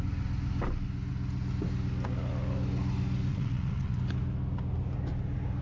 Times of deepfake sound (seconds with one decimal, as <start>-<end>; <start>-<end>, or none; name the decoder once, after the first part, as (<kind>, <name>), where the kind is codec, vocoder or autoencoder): 3.3-4.0 (vocoder, WaveNeXt)